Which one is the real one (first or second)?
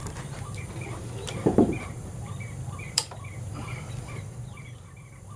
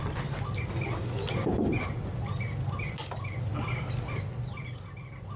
second